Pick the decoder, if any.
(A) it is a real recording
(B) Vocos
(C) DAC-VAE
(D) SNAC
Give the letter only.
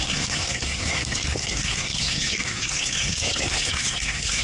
D